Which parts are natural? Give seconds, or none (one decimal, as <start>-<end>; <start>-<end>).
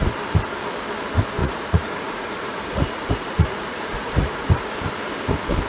0.0-1.4; 4.8-5.7